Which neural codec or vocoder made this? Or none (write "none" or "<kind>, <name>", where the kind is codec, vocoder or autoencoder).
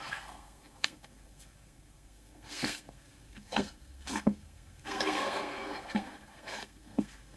codec, SNAC